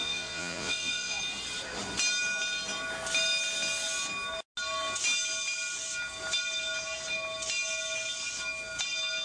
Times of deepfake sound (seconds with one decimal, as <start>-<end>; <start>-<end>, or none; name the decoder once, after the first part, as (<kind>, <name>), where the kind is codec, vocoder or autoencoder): 0.0-1.2 (vocoder, Vocos)